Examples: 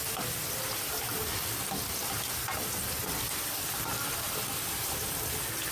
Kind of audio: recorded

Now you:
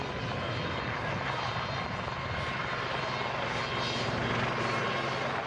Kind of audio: recorded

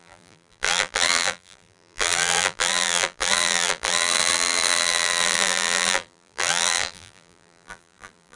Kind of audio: remade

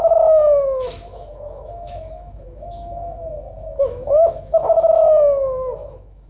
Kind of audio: remade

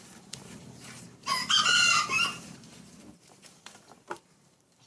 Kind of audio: remade